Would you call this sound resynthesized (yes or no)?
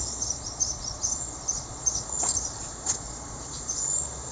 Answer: yes